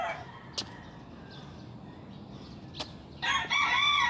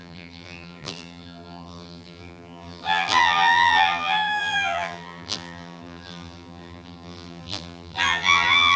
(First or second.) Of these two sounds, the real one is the first